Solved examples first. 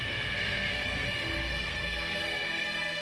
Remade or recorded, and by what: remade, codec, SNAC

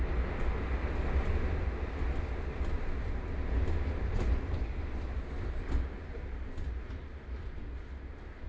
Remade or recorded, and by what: recorded